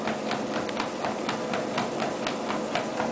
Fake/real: real